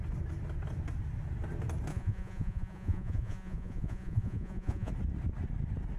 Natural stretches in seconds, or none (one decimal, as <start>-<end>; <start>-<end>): 0.0-1.9; 4.9-6.0